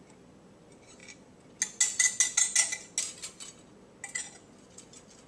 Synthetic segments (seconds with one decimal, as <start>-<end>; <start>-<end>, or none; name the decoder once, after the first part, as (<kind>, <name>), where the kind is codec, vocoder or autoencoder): none